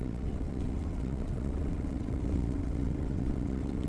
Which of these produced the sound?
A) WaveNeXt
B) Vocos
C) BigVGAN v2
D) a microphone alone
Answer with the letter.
A